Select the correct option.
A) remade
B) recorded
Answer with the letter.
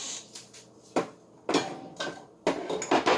B